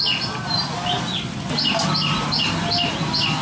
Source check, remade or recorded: recorded